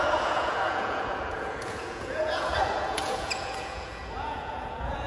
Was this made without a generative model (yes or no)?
no